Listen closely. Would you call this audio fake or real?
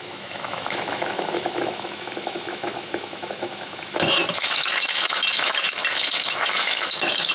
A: fake